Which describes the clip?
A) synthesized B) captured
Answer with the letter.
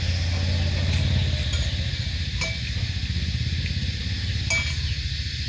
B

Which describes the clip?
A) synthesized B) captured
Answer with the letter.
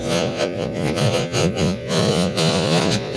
A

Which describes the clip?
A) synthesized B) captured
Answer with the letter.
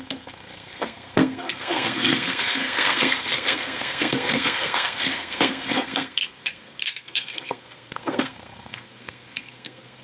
A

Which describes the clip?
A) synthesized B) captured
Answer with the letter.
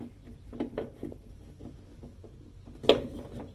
B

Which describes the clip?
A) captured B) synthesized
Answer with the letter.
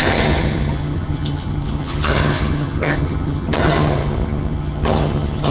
B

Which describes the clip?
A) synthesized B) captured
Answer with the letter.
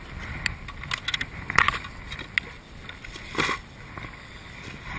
B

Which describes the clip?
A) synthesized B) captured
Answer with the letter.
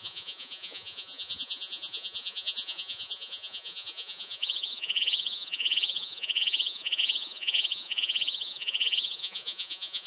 A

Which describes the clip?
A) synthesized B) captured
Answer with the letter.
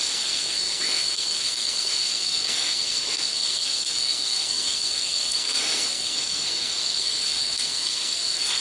A